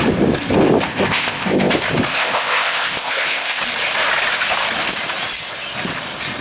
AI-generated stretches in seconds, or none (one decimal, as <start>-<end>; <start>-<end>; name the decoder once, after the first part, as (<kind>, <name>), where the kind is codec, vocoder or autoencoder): 0.9-1.7 (codec, ZipCodec); 2.1-3.6